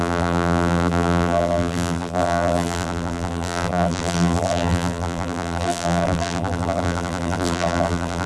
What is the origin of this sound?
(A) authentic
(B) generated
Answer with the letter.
B